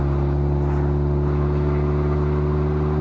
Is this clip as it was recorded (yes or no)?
yes